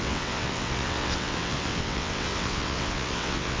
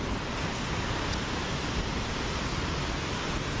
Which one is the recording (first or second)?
second